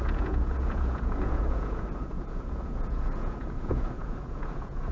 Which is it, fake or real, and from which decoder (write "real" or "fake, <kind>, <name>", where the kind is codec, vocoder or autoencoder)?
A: fake, vocoder, Vocos